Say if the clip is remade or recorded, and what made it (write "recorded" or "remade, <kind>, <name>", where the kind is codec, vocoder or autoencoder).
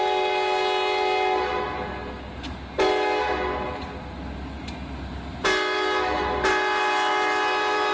recorded